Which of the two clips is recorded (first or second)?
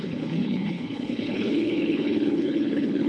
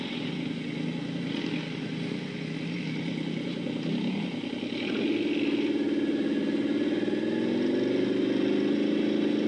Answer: second